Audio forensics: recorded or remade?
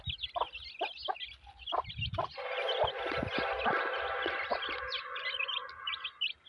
recorded